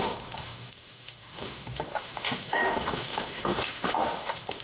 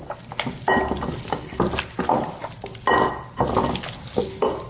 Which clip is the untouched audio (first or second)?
second